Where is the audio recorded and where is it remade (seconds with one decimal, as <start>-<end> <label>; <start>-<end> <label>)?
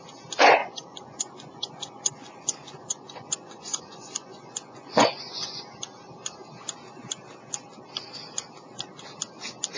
0.0-0.6 recorded; 0.6-5.6 remade; 5.6-9.8 recorded